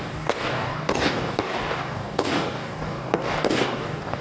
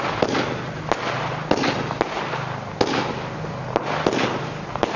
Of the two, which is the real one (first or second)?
second